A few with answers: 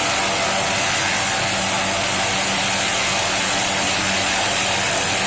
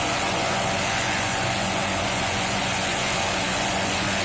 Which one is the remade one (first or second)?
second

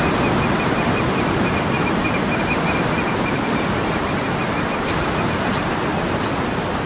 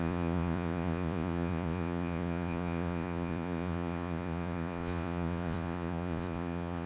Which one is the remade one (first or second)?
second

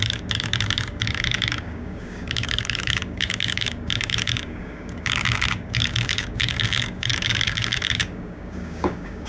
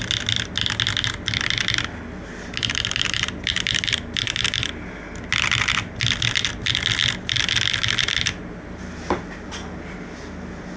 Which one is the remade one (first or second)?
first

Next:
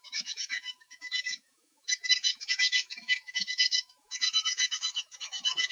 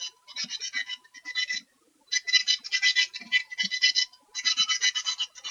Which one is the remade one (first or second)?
first